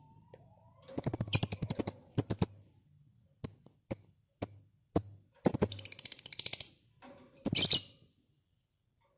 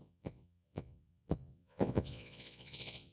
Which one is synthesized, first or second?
second